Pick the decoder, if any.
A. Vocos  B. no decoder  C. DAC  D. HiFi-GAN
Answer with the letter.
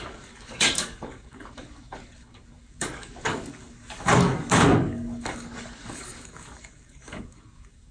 C